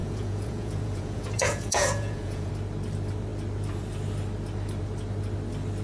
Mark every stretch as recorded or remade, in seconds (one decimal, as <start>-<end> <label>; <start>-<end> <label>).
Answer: 0.0-2.5 remade; 2.5-5.8 recorded